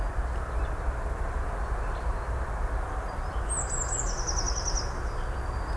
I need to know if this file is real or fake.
real